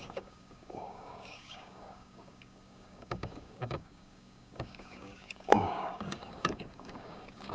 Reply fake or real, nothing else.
fake